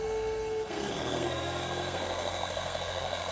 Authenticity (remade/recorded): remade